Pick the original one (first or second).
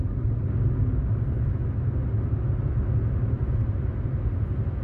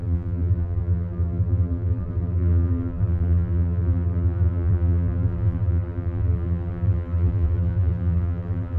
first